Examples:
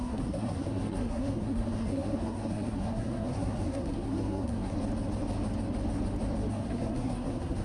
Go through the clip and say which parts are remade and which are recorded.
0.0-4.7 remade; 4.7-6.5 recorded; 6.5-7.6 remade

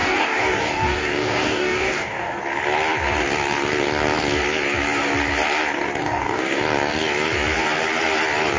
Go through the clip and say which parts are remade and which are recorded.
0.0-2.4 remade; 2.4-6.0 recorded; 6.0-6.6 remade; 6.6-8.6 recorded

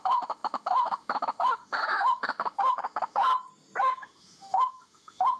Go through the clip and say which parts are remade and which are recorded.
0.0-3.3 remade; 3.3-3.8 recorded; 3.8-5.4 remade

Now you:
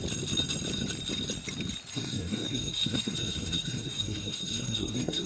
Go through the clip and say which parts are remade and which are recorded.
0.0-1.9 recorded; 1.9-5.3 remade

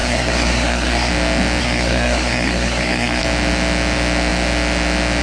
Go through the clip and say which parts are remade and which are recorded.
0.0-1.1 remade; 1.1-1.6 recorded; 1.6-3.2 remade; 3.2-5.2 recorded

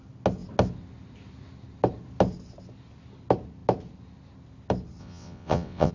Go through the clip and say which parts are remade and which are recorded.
0.0-5.0 recorded; 5.0-5.9 remade

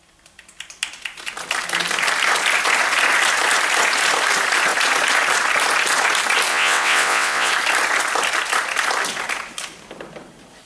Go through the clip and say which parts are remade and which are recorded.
0.0-6.5 recorded; 6.5-7.5 remade; 7.5-10.7 recorded